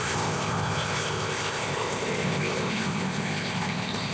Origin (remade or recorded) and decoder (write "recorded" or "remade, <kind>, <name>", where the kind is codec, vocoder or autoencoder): remade, codec, ZipCodec